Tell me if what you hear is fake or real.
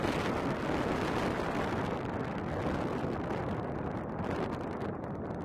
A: fake